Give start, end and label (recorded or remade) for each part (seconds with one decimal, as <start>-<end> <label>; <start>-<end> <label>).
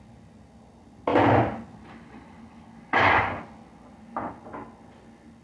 0.0-5.4 recorded